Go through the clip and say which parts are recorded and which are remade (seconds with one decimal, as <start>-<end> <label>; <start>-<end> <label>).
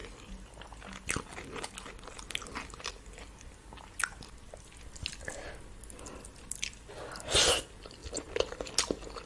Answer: 0.0-9.3 recorded